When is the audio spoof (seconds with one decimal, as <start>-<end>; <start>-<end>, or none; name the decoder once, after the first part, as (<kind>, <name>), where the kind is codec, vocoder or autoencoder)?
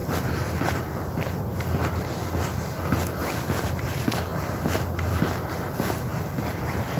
0.0-0.6 (vocoder, BigVGAN v2); 4.3-4.8